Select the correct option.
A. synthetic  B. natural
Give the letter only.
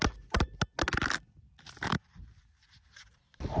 B